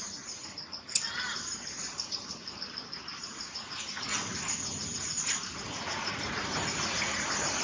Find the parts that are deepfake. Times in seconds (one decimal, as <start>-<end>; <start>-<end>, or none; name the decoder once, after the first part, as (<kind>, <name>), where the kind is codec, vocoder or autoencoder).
3.3-6.9 (vocoder, Vocos)